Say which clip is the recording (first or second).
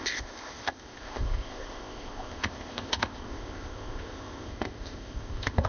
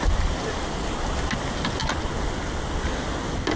second